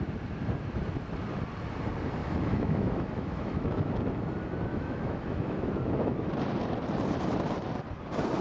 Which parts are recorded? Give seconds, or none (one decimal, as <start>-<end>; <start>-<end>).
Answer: 0.0-2.2; 3.9-4.7; 6.3-8.4